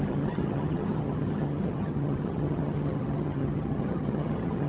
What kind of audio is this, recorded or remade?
remade